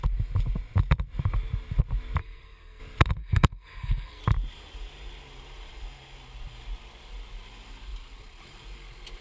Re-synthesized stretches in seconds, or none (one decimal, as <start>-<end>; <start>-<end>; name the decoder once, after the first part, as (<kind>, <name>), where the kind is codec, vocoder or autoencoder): 2.2-2.8 (codec, SNAC); 3.2-4.2